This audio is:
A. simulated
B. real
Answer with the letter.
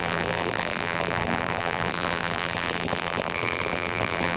A